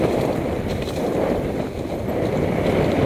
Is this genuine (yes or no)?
yes